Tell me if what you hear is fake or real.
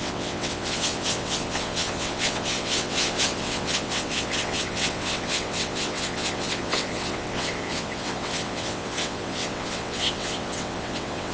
fake